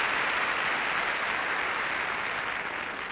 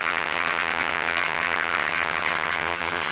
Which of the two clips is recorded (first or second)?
first